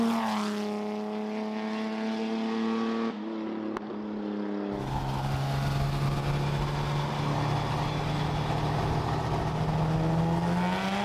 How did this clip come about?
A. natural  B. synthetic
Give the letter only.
A